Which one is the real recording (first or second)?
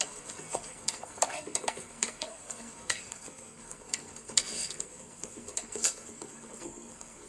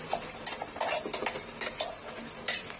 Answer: second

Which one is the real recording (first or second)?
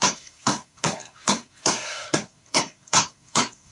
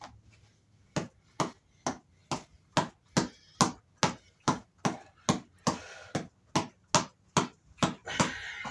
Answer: second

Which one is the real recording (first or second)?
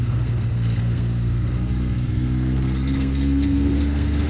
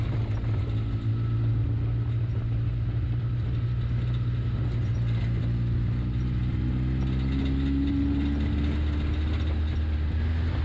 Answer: second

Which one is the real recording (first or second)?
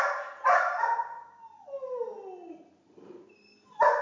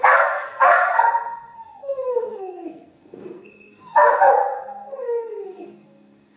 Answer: first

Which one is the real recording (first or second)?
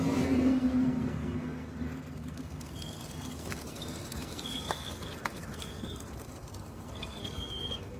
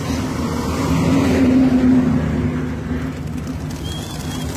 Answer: second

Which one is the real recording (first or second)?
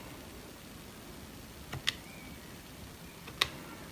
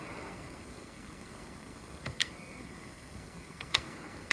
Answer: first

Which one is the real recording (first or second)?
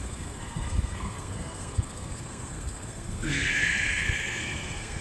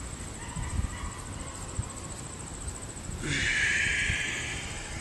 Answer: second